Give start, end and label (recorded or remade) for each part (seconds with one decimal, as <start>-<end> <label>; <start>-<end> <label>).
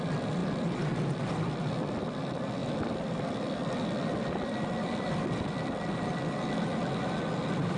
0.0-7.8 recorded